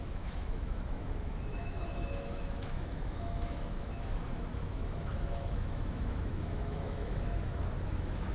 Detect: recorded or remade remade